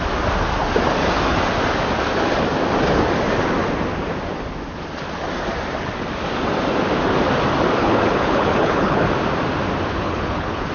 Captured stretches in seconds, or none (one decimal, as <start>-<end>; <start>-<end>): 0.0-7.8; 9.1-9.9